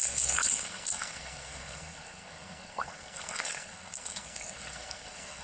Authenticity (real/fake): fake